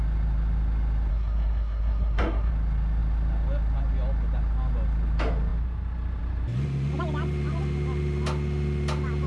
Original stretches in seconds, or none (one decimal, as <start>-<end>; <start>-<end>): 0.0-1.1; 2.5-9.3